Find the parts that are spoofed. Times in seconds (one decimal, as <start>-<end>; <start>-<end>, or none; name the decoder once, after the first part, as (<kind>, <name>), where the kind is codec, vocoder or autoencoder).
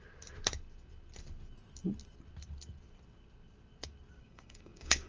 4.2-5.1 (codec, DAC)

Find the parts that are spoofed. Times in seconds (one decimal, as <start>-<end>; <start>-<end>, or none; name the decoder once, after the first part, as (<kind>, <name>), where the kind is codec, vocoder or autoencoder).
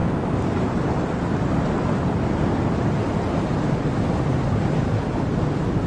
none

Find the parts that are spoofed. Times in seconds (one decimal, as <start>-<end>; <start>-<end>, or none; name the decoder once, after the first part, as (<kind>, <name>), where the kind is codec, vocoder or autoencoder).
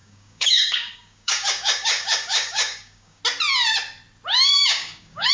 0.0-3.2 (codec, DAC); 4.5-5.3